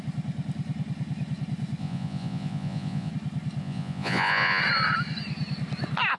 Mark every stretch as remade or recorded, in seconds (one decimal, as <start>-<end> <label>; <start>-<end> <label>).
0.0-1.8 recorded; 1.8-3.1 remade; 3.1-3.6 recorded; 3.6-4.6 remade; 4.6-6.2 recorded